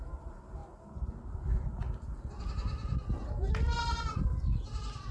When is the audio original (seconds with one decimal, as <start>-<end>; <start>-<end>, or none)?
0.0-5.1